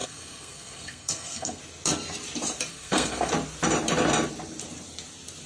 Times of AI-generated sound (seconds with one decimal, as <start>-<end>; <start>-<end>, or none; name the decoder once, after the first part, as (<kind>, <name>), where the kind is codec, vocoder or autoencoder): 0.0-1.6 (codec, SNAC); 2.7-3.3